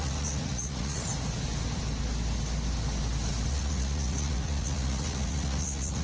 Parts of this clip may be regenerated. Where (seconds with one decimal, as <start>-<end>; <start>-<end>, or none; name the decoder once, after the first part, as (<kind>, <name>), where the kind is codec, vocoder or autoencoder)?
0.0-1.1 (vocoder, Vocos); 3.5-6.0